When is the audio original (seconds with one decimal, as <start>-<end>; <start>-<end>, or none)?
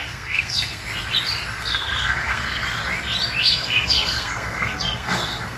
0.8-1.6; 2.6-3.4